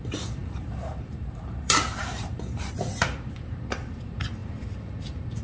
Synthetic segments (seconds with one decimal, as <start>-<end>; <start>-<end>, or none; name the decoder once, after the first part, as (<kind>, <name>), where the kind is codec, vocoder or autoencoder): 0.0-5.4 (vocoder, BigVGAN v2)